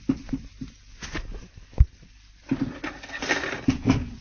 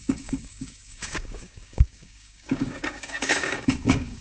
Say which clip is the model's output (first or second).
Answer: second